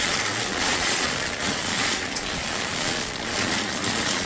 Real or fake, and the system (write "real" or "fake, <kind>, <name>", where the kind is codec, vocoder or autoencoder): fake, vocoder, Vocos